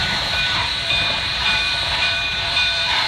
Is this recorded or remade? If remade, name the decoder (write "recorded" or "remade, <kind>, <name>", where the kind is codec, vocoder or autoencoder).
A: remade, vocoder, BigVGAN v2